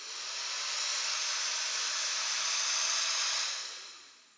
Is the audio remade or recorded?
recorded